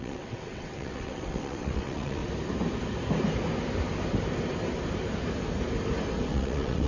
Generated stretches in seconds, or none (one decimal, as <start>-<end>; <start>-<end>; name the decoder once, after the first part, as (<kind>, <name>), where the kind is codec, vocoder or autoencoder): 0.0-2.2 (vocoder, WaveNeXt); 6.3-6.9